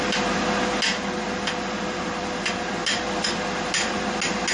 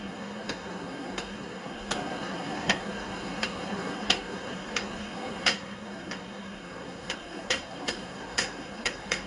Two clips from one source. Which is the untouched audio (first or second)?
first